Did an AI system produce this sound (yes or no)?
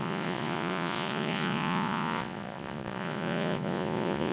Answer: yes